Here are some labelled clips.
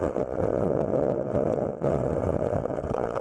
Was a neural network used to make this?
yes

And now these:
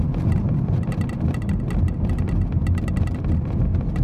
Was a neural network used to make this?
no